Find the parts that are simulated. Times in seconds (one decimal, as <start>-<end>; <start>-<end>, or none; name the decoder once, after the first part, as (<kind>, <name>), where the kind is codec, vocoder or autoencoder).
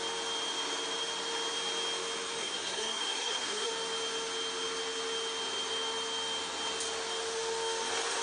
2.4-3.7 (codec, SNAC)